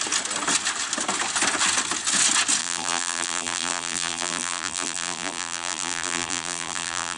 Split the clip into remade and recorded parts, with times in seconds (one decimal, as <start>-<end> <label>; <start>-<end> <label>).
0.0-2.6 recorded; 2.6-7.2 remade